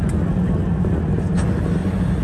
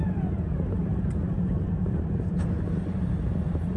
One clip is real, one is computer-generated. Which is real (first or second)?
first